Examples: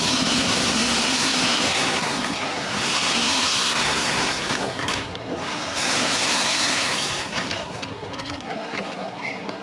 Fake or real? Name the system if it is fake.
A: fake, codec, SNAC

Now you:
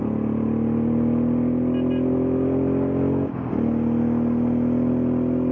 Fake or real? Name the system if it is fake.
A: real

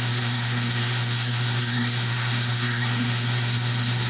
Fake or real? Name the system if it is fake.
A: fake, codec, SNAC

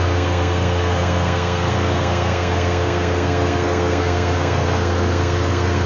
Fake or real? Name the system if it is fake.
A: fake, codec, SNAC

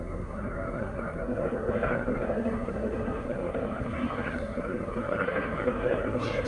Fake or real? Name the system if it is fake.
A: fake, codec, SNAC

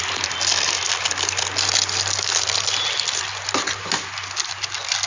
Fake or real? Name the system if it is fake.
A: real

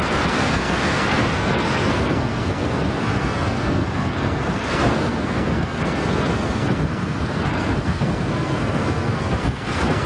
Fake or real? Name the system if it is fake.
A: fake, codec, SNAC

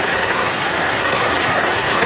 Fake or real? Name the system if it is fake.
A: fake, codec, SNAC